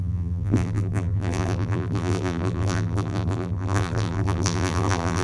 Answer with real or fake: fake